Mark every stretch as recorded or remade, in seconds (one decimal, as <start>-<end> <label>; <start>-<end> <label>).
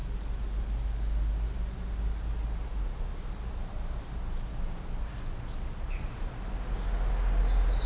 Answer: 0.0-7.9 recorded